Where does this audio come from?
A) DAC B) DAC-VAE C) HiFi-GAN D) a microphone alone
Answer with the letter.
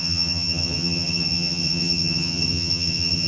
C